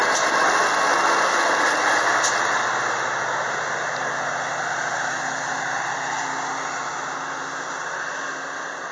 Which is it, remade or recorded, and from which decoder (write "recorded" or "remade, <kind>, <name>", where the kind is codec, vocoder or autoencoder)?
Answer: recorded